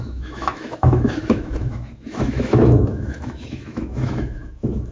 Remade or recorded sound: remade